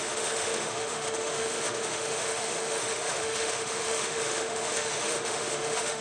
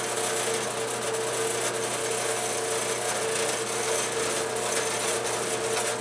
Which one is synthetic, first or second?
first